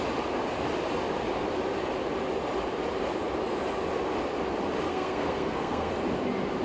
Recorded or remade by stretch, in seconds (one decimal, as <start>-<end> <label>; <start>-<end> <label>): 0.0-4.9 recorded; 4.9-5.9 remade; 5.9-6.6 recorded